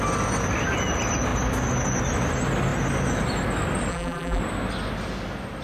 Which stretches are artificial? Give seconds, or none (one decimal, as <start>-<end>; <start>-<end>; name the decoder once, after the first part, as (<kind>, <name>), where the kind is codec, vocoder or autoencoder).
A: 3.9-4.4 (vocoder, BigVGAN v2)